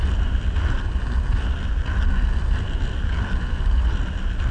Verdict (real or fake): real